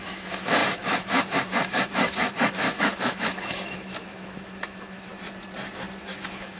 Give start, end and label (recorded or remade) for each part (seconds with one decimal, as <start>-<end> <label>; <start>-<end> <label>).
0.0-5.1 remade; 5.1-6.0 recorded; 6.0-6.6 remade